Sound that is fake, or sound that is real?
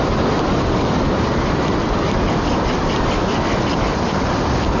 real